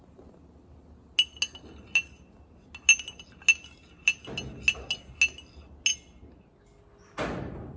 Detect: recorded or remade recorded